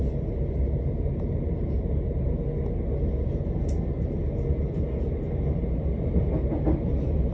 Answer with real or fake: real